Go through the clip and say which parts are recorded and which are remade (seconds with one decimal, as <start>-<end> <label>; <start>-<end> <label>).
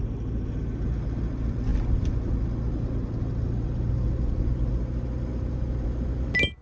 0.0-6.6 recorded